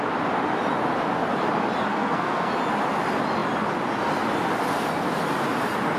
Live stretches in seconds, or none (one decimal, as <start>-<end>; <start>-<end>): 0.0-1.9; 2.5-6.0